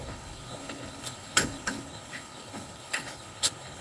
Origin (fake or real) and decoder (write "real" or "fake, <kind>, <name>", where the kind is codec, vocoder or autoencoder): fake, codec, HILCodec